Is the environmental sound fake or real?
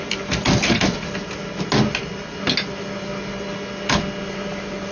real